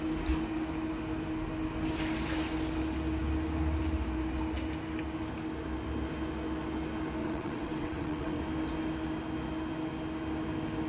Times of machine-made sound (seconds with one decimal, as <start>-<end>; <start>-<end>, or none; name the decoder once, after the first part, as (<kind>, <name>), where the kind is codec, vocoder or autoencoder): 7.2-8.4 (vocoder, WaveNeXt)